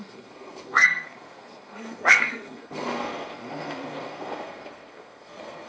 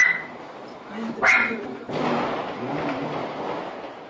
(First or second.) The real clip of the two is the second